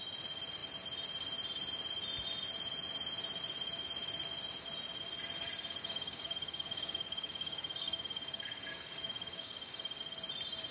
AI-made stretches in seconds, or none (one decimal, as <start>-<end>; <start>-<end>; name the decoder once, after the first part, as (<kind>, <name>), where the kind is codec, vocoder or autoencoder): 5.8-10.0 (codec, DAC)